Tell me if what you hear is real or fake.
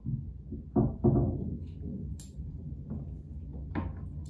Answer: real